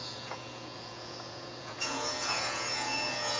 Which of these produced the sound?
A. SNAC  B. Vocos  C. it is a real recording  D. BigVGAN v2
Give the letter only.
B